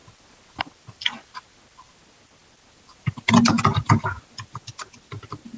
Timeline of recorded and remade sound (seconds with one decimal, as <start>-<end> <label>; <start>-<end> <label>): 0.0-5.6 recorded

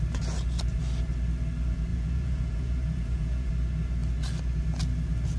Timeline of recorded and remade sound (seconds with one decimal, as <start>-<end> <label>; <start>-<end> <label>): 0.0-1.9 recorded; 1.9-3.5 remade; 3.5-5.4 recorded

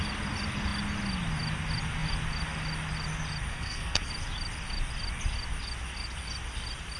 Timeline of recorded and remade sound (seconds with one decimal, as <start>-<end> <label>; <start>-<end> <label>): 0.0-3.5 recorded; 3.5-4.1 remade; 4.1-7.0 recorded

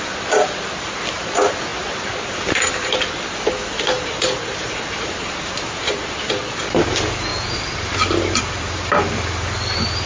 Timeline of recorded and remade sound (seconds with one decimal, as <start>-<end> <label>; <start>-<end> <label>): 0.0-10.1 remade

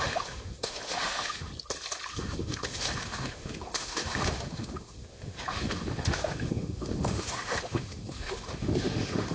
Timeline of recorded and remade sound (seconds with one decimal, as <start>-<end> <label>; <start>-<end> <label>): 0.0-1.5 remade; 1.5-2.1 recorded; 2.1-9.3 remade

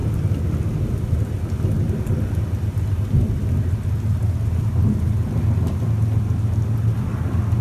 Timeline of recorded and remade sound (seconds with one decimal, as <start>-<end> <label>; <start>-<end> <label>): 0.0-7.6 recorded